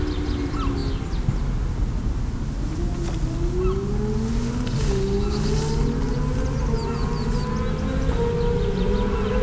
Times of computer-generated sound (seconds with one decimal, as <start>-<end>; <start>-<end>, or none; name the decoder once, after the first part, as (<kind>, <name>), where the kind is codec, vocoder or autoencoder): none

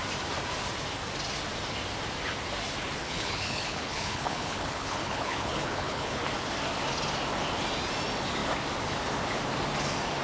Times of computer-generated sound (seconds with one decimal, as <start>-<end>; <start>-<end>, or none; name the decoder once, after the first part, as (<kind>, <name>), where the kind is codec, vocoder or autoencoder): 3.0-6.2 (codec, HILCodec)

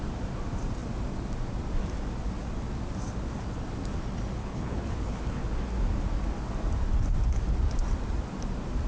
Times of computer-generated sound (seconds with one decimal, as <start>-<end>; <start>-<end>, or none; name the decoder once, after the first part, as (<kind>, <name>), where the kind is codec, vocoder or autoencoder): 4.4-5.4 (codec, HILCodec)

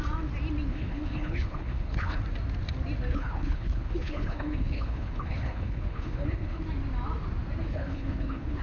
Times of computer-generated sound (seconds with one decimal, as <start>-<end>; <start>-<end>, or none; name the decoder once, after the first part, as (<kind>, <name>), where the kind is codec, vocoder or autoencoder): 0.7-2.2 (codec, HILCodec); 3.1-6.6; 7.6-8.6

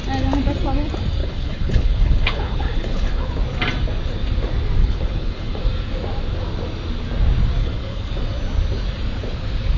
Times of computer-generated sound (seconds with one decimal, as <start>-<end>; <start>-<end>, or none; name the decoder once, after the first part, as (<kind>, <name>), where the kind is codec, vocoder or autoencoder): 1.2-3.3 (codec, HILCodec); 4.8-5.6; 7.6-8.1

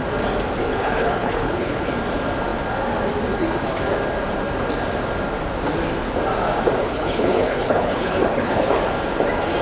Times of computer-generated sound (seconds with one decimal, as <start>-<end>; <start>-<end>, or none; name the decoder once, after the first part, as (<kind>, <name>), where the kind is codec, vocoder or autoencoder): 0.7-1.9 (codec, HILCodec); 6.8-8.8

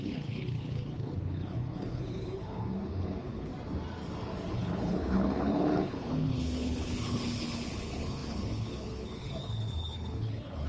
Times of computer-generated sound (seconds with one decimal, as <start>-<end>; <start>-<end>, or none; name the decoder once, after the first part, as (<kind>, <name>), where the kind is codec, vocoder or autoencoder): 0.0-3.5 (codec, HILCodec); 4.5-10.7

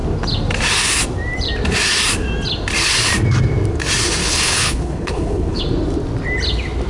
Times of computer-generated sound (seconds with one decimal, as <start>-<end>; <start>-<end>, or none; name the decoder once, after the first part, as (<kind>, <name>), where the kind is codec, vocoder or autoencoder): 4.2-5.6 (codec, HILCodec)